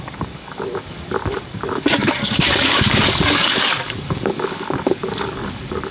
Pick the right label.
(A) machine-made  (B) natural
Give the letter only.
A